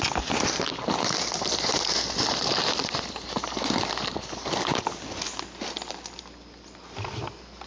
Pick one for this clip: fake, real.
real